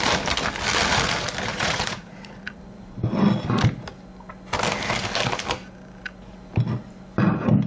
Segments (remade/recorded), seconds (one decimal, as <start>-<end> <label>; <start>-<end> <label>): 0.0-1.5 recorded; 1.5-2.6 remade; 2.6-7.7 recorded